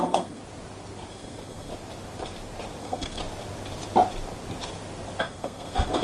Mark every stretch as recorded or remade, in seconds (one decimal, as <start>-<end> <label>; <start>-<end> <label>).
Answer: 0.0-0.4 remade; 0.4-1.1 recorded; 1.1-1.7 remade; 1.7-2.8 recorded; 2.8-3.2 remade; 3.2-5.2 recorded; 5.2-6.0 remade